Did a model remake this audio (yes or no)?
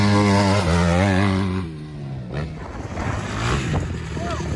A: no